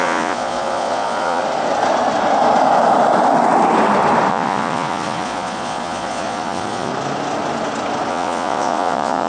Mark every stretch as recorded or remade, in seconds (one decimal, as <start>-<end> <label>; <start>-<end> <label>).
0.0-1.4 remade; 1.4-4.3 recorded; 4.3-6.9 remade; 6.9-8.1 recorded; 8.1-9.3 remade